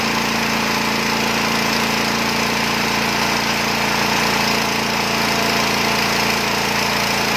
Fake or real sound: real